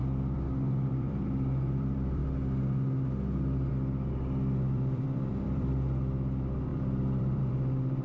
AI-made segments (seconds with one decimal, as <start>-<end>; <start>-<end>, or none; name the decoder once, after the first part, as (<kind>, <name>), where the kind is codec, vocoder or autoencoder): 0.9-2.2 (vocoder, BigVGAN v2); 3.7-8.0